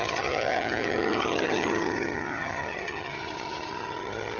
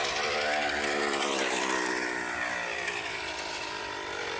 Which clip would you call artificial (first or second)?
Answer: first